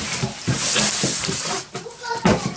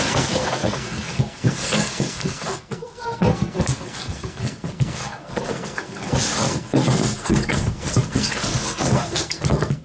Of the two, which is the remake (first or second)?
second